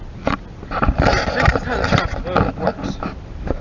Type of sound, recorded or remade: recorded